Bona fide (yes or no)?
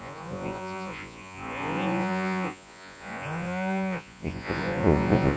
no